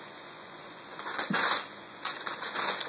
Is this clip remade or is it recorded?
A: remade